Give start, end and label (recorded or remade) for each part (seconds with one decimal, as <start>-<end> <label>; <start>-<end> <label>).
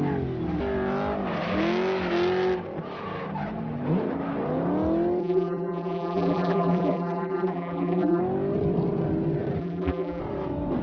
0.0-5.2 recorded; 5.2-8.2 remade; 8.2-9.6 recorded; 9.6-10.2 remade; 10.2-10.8 recorded